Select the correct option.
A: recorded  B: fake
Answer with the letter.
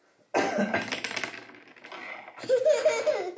A